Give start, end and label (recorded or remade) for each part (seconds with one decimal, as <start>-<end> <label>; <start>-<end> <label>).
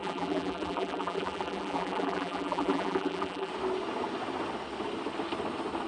0.0-3.5 remade; 3.5-5.9 recorded